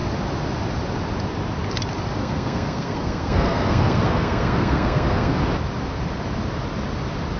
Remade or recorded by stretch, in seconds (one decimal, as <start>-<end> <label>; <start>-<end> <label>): 0.0-2.2 recorded; 2.2-5.4 remade; 5.4-7.4 recorded